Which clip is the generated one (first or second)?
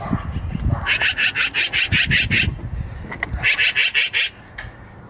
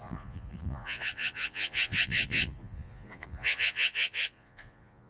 second